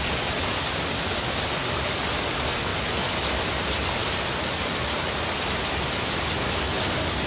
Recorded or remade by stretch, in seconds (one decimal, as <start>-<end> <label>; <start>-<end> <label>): 0.0-7.3 recorded